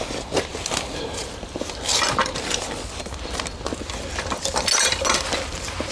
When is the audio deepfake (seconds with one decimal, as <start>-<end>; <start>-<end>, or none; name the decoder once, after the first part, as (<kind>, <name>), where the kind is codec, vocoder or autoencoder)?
none